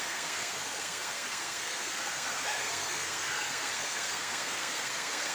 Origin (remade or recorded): remade